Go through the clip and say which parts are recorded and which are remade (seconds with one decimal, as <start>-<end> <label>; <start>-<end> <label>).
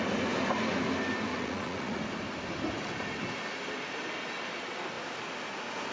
0.0-1.3 recorded; 1.3-2.0 remade; 2.0-5.9 recorded